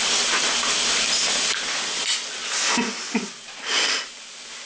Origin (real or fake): real